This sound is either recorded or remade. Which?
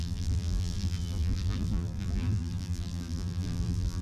remade